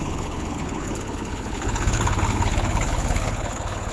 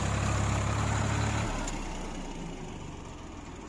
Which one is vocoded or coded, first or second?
first